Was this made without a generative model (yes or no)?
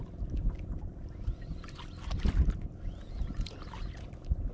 yes